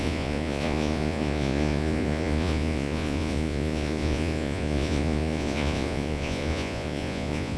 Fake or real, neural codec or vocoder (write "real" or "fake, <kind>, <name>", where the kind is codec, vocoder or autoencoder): fake, vocoder, Vocos